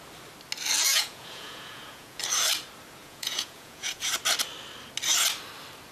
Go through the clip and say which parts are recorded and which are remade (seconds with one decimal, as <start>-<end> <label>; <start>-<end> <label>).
0.0-0.9 recorded; 0.9-2.2 remade; 2.2-3.0 recorded; 3.0-4.1 remade; 4.1-5.9 recorded